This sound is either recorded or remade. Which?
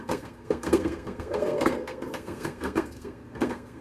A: remade